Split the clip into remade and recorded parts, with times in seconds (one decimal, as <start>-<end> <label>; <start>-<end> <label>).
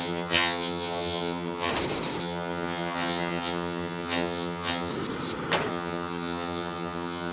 0.0-1.7 remade; 1.7-2.2 recorded; 2.2-4.9 remade; 4.9-5.7 recorded; 5.7-7.3 remade